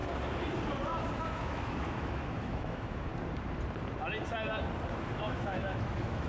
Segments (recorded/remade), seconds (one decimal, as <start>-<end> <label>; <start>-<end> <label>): 0.0-1.2 recorded; 1.2-3.1 remade; 3.1-5.1 recorded; 5.1-6.3 remade